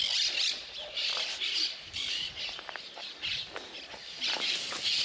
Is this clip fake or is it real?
real